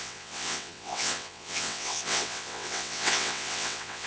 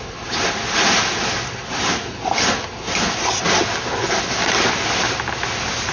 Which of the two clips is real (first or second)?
second